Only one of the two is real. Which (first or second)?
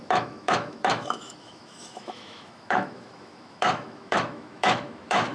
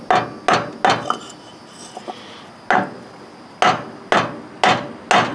second